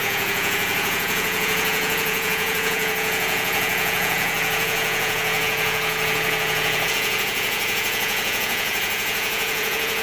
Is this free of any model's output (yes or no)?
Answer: no